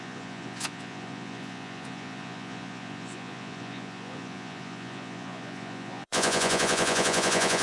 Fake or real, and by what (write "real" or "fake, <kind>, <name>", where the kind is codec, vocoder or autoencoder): fake, vocoder, Vocos